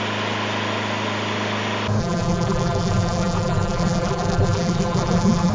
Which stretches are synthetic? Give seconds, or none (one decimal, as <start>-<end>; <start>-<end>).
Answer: 2.0-5.5